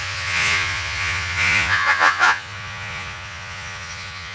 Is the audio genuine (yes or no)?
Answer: no